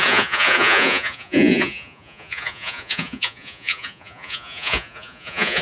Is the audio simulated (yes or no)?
yes